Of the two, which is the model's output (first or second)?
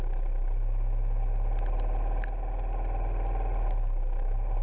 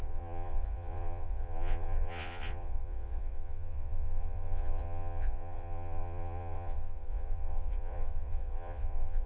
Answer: second